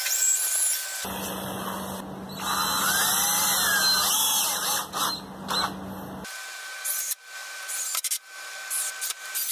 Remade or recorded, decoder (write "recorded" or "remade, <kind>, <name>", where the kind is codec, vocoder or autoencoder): recorded